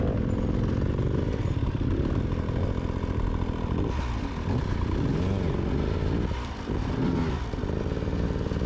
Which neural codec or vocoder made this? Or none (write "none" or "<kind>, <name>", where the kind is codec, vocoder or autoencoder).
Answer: vocoder, BigVGAN v2